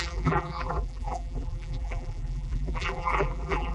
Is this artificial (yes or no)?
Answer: yes